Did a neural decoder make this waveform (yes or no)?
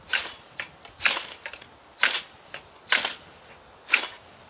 no